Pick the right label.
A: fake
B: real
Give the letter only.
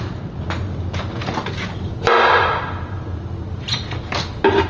B